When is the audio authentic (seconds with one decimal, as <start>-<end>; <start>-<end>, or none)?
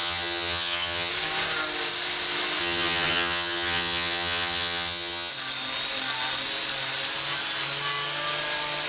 1.1-2.6; 5.3-8.9